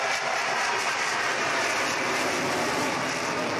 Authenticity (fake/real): fake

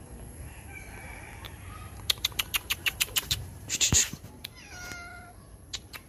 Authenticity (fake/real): fake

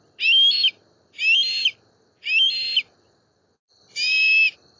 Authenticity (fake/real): fake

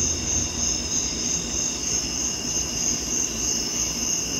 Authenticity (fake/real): fake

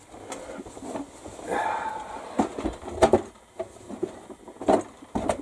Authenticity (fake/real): real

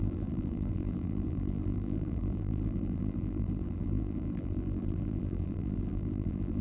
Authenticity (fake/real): fake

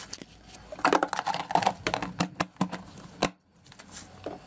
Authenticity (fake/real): real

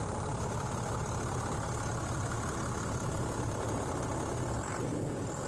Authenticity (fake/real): fake